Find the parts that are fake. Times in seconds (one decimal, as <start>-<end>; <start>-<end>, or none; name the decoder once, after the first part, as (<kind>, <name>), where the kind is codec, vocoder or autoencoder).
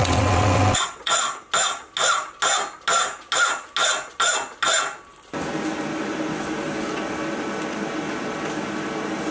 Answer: 0.0-1.1 (vocoder, WaveNeXt)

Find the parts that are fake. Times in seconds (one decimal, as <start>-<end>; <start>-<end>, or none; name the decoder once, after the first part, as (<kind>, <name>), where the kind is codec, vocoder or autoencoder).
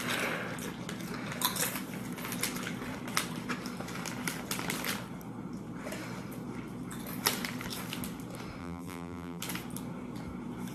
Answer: 8.6-9.4 (vocoder, BigVGAN v2)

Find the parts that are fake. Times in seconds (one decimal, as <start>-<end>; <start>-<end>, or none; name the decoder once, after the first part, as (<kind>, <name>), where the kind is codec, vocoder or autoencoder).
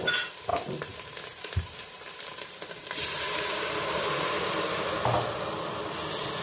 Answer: 0.5-4.3 (vocoder, BigVGAN v2)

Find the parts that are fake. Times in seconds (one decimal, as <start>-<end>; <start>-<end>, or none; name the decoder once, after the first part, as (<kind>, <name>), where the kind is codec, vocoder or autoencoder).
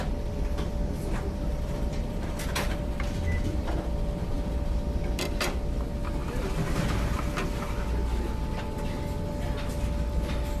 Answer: 1.5-3.7 (vocoder, BigVGAN v2)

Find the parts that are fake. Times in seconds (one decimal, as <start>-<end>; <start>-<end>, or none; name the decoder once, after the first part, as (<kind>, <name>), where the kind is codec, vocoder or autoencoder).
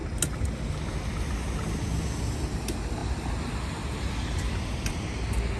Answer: none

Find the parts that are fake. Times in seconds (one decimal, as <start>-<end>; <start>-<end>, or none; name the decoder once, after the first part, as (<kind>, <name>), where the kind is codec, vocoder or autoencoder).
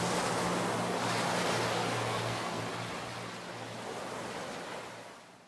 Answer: 1.8-2.6 (codec, SNAC)